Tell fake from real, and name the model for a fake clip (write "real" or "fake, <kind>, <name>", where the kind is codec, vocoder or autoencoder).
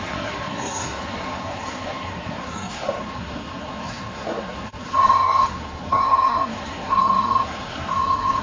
fake, codec, SNAC